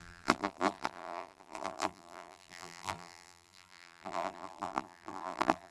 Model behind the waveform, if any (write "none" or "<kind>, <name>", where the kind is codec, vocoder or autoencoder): vocoder, BigVGAN v2